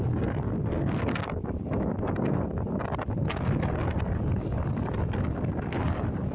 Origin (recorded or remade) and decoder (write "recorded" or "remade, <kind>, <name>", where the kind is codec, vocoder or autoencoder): recorded